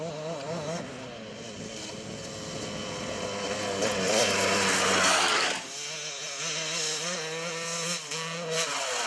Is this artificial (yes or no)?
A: no